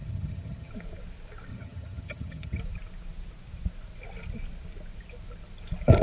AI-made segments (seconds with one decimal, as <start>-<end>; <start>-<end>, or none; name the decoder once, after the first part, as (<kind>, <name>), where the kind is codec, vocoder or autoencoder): 0.0-0.7 (vocoder, HiFi-GAN); 1.5-2.6